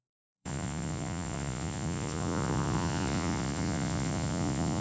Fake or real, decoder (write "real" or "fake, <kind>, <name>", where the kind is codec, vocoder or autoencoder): fake, vocoder, Vocos